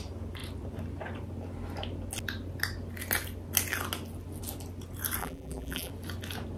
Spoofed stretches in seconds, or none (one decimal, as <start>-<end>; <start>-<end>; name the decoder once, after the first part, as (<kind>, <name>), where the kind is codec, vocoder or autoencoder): 5.2-5.9 (vocoder, BigVGAN v2)